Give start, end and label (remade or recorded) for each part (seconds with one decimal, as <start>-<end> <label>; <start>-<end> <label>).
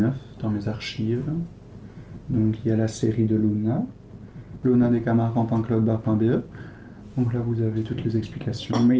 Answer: 0.0-9.0 recorded